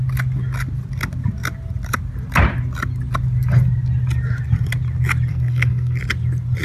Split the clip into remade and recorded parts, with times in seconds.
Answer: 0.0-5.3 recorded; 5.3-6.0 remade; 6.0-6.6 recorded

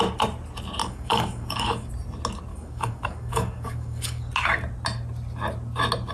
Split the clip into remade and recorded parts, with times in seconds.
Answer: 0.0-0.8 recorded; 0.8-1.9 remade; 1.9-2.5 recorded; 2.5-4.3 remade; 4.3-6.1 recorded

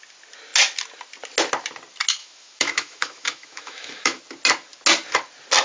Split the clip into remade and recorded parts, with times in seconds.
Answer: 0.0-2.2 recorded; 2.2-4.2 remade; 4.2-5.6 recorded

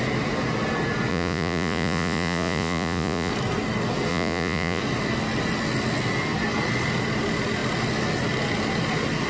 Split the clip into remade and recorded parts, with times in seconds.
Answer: 0.0-1.1 recorded; 1.1-3.3 remade; 3.3-4.1 recorded; 4.1-4.8 remade; 4.8-9.3 recorded